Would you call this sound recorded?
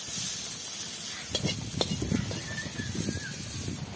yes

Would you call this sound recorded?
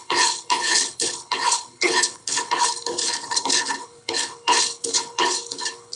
no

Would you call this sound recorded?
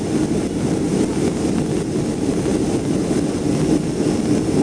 yes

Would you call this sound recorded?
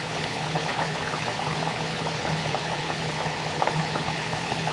no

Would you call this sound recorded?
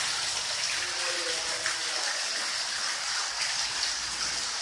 yes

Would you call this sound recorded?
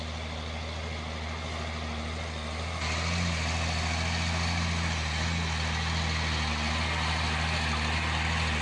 yes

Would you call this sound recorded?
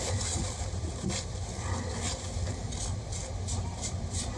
yes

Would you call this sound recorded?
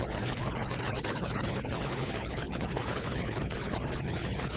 no